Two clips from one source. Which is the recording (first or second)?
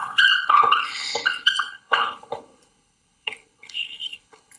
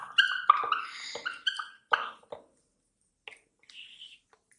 second